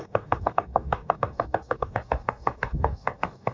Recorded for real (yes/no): no